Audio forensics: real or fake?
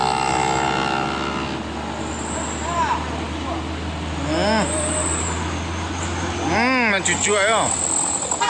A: real